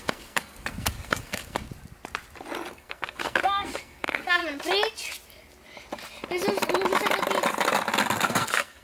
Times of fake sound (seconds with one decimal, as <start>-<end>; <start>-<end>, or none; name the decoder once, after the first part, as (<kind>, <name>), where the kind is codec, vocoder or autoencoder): 0.0-1.7 (codec, SNAC); 2.7-4.4; 8.2-8.8